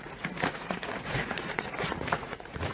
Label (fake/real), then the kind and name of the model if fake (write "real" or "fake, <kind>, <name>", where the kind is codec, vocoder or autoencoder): fake, vocoder, Vocos